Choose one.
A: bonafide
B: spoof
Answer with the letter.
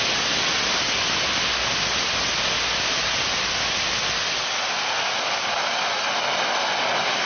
A